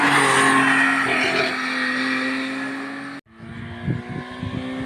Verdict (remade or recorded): recorded